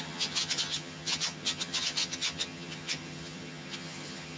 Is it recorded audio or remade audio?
remade